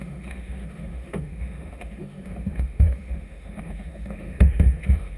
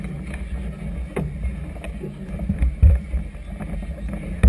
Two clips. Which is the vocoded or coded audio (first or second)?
first